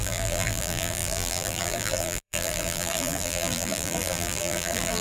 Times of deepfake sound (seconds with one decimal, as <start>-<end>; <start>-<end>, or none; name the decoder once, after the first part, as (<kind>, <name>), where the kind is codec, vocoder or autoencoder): 0.0-5.0 (vocoder, BigVGAN v2)